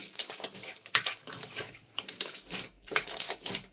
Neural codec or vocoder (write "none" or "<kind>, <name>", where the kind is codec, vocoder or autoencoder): codec, DAC